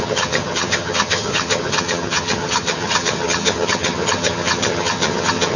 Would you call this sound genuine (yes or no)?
no